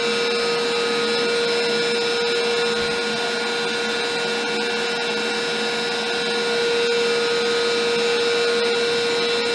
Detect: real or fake real